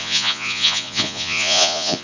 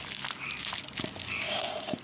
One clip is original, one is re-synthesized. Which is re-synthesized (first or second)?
first